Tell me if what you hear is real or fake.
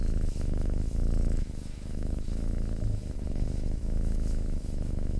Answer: fake